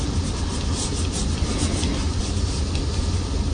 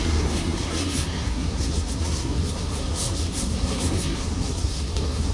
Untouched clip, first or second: first